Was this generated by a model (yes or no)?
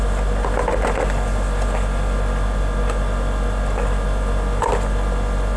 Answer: no